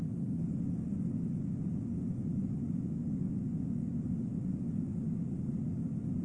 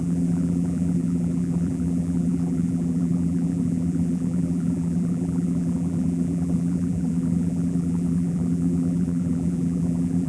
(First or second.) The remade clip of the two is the second